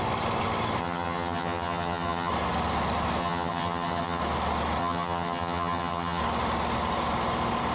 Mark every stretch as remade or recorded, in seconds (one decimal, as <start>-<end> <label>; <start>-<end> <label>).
0.0-0.8 recorded; 0.8-2.3 remade; 2.3-3.2 recorded; 3.2-4.2 remade; 4.2-4.8 recorded; 4.8-6.2 remade; 6.2-7.7 recorded